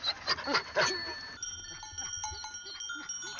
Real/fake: real